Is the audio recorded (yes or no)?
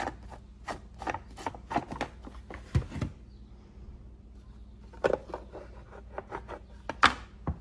yes